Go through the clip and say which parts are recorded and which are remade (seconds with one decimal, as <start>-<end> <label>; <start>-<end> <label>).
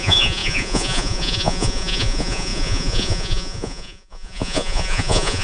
0.0-5.4 remade